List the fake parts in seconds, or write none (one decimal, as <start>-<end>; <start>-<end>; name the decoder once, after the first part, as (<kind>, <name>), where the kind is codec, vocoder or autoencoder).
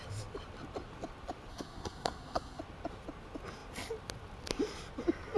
1.5-2.6 (codec, SNAC)